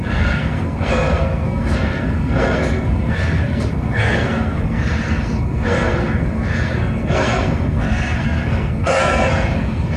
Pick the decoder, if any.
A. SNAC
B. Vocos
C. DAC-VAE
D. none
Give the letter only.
A